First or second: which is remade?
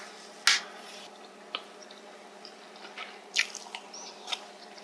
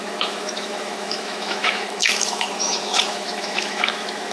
second